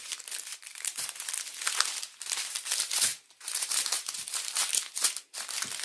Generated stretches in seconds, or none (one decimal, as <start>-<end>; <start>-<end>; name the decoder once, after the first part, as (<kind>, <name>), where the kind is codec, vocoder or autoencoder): 0.5-1.3 (vocoder, BigVGAN v2); 3.1-4.7